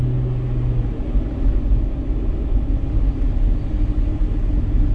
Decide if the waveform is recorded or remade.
recorded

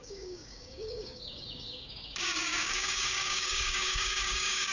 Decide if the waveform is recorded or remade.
remade